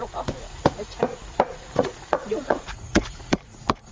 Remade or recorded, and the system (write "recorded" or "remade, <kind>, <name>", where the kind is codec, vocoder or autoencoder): remade, vocoder, Vocos